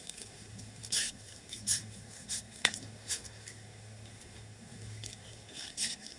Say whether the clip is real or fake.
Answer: fake